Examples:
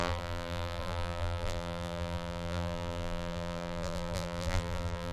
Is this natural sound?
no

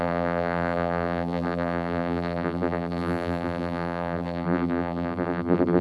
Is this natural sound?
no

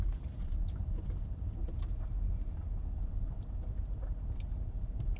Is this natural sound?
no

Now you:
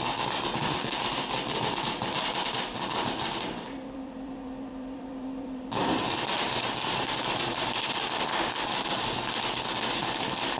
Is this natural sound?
no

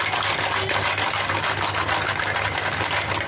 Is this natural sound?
yes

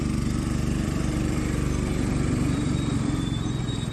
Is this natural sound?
no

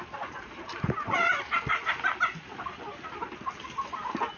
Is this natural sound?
yes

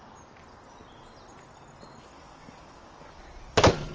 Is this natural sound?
yes